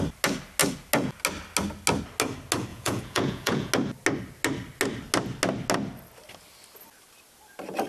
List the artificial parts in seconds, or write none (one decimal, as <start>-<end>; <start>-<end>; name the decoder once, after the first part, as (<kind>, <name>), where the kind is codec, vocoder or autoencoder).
2.7-3.7 (vocoder, Vocos)